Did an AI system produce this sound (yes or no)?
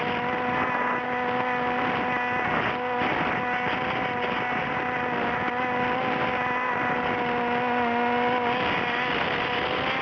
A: no